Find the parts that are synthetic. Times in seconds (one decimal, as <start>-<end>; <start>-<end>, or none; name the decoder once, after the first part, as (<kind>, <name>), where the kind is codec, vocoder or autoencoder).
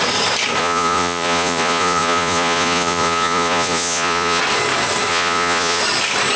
0.6-4.4 (vocoder, Vocos); 5.1-5.8